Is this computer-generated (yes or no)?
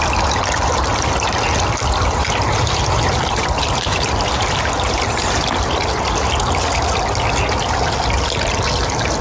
no